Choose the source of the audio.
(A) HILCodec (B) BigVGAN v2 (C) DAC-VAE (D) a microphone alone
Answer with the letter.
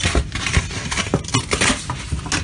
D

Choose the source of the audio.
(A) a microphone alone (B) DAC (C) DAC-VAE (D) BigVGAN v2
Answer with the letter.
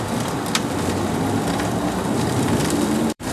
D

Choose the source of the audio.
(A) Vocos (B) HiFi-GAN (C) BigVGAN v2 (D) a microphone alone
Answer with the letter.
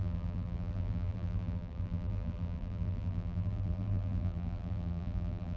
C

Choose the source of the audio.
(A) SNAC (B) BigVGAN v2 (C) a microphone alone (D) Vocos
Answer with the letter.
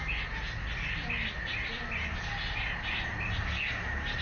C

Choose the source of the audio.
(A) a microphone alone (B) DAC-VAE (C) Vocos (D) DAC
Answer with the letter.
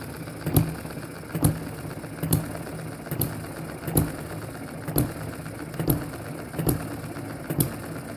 A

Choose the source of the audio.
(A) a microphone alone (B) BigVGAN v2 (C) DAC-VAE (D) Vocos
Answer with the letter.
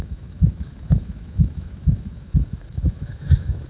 C